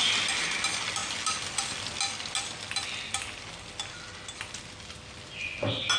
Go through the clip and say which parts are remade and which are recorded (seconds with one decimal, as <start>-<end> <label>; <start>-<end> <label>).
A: 0.0-6.0 recorded